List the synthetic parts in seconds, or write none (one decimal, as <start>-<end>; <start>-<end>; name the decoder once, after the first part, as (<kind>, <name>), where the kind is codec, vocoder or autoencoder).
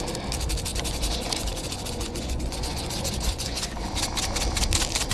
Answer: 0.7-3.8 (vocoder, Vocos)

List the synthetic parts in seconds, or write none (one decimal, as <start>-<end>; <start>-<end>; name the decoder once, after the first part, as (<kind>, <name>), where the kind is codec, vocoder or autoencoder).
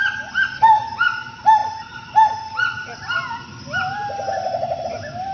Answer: none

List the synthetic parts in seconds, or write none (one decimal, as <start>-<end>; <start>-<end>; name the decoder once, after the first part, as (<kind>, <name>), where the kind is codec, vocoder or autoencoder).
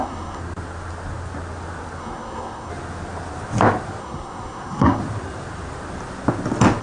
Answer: 0.0-0.4 (codec, SNAC); 2.0-2.7; 4.0-5.0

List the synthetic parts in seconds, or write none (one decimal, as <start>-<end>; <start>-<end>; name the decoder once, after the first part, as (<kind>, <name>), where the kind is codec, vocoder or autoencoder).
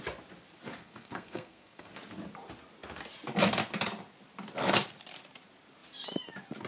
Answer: 0.8-1.9 (codec, SNAC)